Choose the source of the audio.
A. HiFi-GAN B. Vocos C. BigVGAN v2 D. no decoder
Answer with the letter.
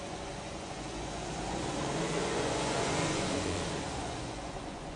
B